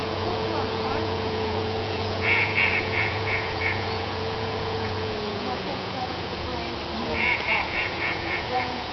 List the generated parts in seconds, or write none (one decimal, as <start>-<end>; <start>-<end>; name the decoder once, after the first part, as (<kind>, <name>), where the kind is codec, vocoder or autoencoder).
0.0-6.5 (vocoder, Vocos); 7.0-8.9